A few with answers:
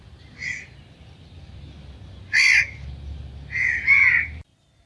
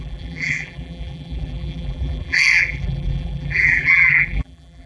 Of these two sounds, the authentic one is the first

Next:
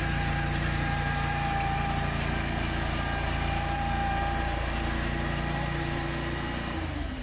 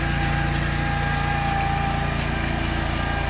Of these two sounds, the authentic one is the second